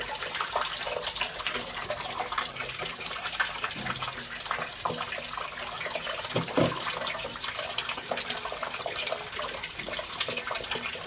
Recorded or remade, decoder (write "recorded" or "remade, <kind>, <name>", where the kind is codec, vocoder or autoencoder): recorded